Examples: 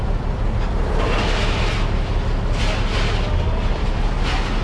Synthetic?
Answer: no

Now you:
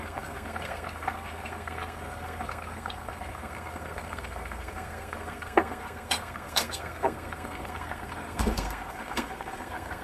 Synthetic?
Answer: yes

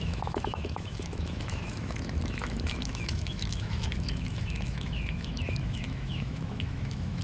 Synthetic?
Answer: yes